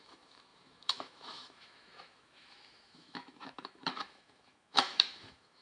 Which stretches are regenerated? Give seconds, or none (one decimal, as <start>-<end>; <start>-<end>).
0.0-5.6